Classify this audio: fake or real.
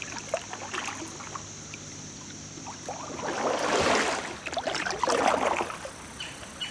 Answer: real